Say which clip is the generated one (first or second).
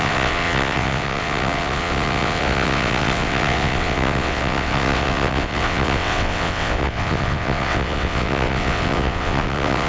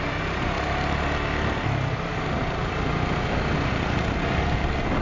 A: first